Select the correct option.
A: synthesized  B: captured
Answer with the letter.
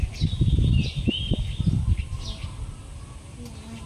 B